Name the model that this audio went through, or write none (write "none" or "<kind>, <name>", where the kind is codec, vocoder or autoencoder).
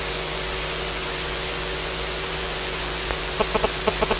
vocoder, Vocos